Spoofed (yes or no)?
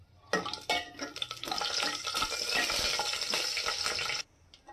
no